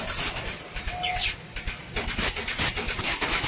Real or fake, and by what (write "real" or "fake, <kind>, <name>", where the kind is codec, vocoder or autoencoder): real